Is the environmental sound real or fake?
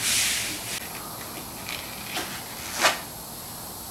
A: real